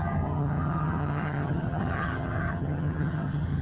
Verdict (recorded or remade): remade